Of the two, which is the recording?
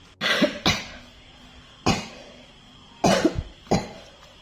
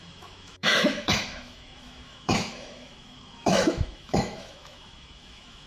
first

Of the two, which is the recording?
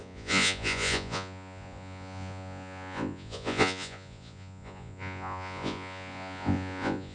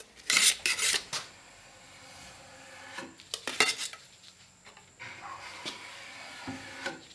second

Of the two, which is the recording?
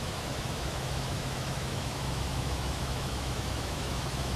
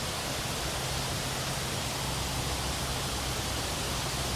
second